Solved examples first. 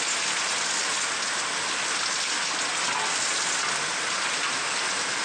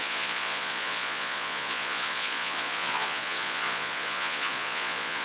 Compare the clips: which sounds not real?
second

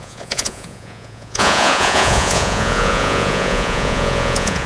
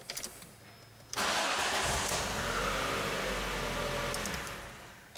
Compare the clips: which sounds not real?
first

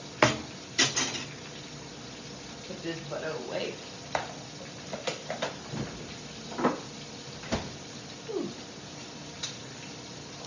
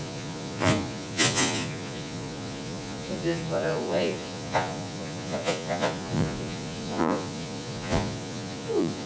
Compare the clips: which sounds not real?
second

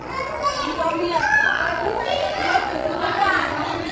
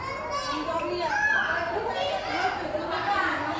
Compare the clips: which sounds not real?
first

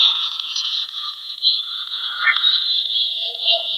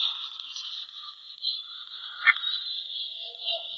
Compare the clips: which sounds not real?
first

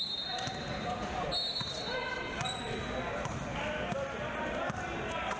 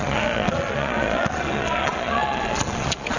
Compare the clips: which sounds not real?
second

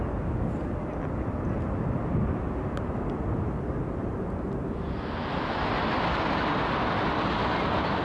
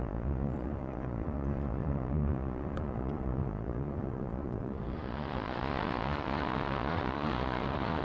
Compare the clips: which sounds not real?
second